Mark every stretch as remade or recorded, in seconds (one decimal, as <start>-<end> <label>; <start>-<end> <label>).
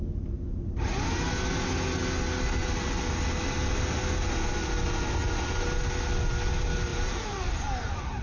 0.0-5.2 recorded; 5.2-5.9 remade; 5.9-6.9 recorded; 6.9-8.2 remade